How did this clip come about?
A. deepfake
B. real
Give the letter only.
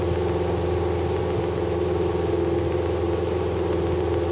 B